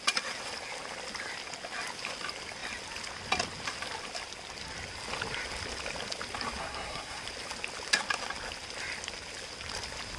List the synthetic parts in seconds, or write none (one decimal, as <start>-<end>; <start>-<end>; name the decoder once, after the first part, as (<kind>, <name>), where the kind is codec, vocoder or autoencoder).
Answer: 6.6-7.2 (codec, SNAC)